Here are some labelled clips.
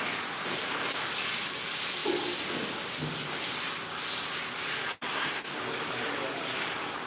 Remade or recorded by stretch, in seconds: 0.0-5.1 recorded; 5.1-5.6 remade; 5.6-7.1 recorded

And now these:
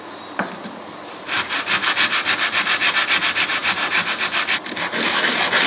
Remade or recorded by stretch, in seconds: 0.0-5.7 recorded